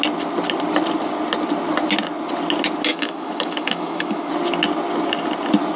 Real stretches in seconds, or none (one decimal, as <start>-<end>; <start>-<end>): 0.0-2.9; 4.3-5.8